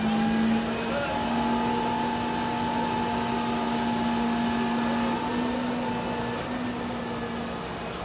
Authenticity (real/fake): real